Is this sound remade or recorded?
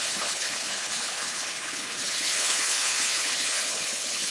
remade